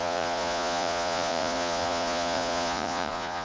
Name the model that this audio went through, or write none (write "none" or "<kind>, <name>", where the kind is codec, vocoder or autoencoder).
vocoder, Vocos